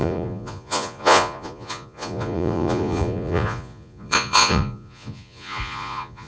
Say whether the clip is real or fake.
fake